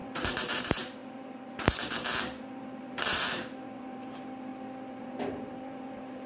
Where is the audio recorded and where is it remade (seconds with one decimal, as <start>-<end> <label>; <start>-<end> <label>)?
0.0-4.5 remade; 4.5-5.0 recorded; 5.0-6.3 remade